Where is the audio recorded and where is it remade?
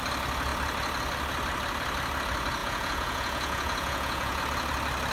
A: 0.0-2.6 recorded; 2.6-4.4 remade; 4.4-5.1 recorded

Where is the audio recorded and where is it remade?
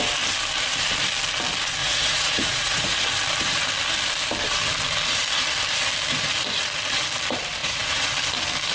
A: 0.0-1.8 recorded; 1.8-3.0 remade; 3.0-7.6 recorded; 7.6-8.1 remade; 8.1-8.7 recorded